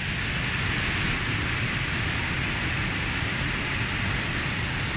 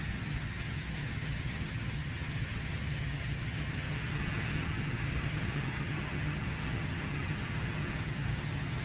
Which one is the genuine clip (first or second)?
first